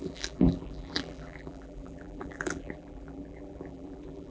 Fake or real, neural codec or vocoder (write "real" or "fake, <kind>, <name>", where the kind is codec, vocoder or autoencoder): fake, vocoder, BigVGAN v2